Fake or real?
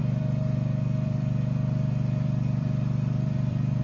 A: fake